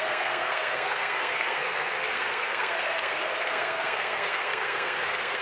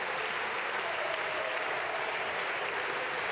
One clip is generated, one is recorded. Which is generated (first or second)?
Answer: first